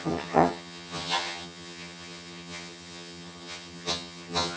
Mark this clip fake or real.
fake